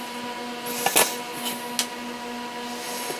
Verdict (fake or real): real